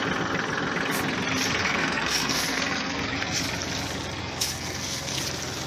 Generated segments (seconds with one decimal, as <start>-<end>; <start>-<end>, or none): 1.6-3.4; 4.2-5.2